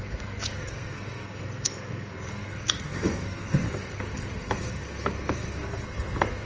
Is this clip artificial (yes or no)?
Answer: yes